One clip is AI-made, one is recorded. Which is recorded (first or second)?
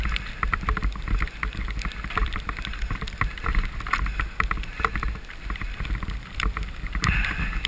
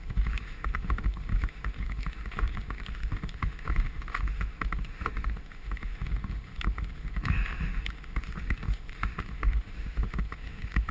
first